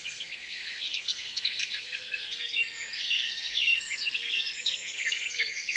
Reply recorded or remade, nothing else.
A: remade